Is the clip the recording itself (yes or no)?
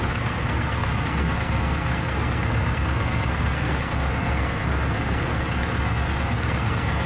no